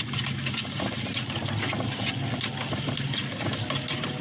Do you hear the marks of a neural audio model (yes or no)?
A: no